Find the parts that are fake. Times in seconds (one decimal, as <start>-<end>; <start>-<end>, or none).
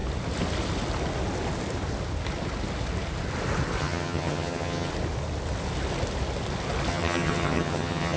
3.8-4.9; 6.9-8.2